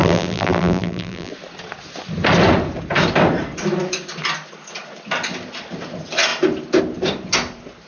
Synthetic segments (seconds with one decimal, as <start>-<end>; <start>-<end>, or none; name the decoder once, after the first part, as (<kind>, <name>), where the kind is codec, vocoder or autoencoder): 0.0-1.3 (vocoder, BigVGAN v2)